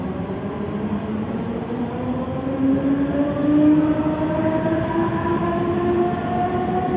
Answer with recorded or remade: recorded